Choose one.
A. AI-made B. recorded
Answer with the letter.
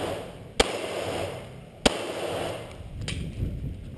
B